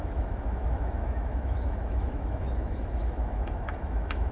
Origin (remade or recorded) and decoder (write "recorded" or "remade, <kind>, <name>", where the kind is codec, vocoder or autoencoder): remade, autoencoder, DAC-VAE